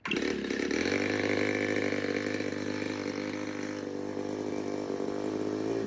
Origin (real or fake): real